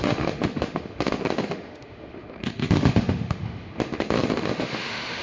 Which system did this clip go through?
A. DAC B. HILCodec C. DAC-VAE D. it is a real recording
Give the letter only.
C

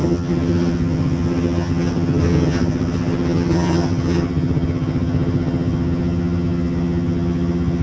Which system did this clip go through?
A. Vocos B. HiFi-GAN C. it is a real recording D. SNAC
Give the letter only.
B